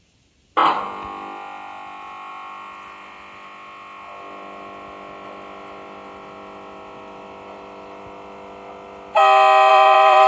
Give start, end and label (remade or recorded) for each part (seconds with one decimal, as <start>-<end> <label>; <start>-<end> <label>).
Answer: 0.0-9.7 recorded; 9.7-10.3 remade